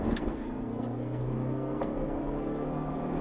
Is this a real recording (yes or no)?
no